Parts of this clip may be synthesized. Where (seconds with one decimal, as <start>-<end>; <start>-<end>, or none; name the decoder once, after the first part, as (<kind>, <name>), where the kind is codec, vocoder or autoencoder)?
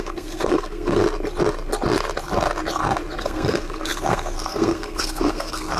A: 0.0-1.0 (codec, SNAC); 3.2-5.8